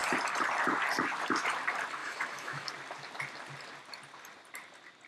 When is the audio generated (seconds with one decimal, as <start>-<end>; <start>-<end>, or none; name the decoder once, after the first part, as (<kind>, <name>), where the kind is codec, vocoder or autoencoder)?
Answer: 2.0-2.7 (autoencoder, DAC-VAE)